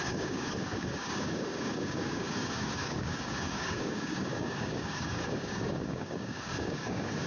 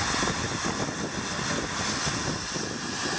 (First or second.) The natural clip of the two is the second